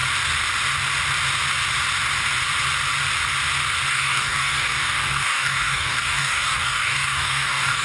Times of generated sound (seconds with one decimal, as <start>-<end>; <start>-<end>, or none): 3.9-7.8